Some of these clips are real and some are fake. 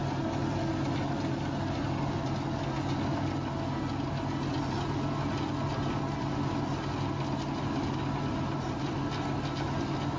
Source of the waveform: real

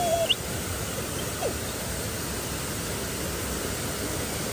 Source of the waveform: real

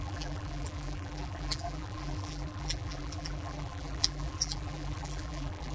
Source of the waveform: fake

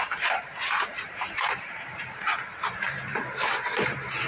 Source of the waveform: fake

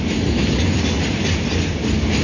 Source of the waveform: real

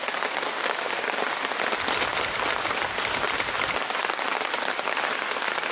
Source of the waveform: real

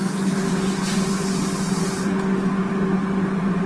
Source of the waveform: real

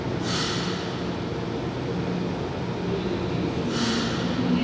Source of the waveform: real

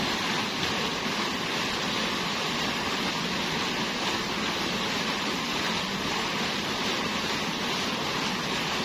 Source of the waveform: real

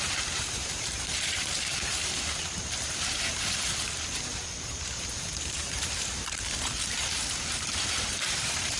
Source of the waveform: fake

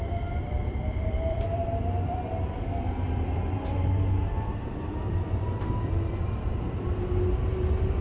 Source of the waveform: fake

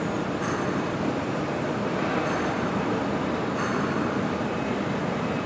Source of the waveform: fake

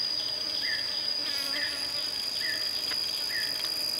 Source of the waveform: real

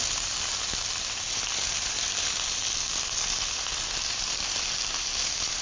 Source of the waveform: fake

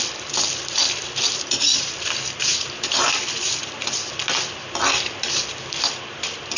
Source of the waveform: fake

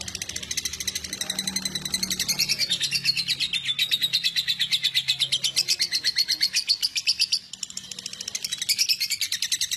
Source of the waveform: real